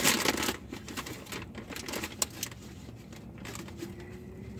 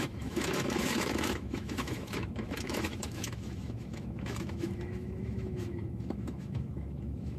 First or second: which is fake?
second